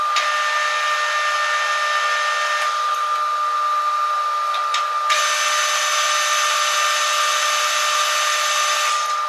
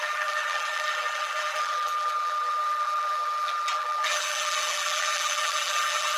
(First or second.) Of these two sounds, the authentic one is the first